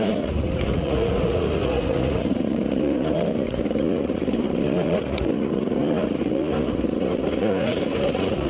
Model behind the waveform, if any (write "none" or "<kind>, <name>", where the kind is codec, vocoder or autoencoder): vocoder, Vocos